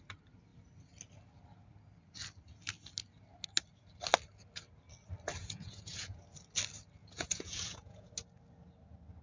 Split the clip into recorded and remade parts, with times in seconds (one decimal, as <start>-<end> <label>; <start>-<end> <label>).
0.0-5.4 recorded; 5.4-6.2 remade; 6.2-7.0 recorded; 7.0-8.1 remade; 8.1-9.2 recorded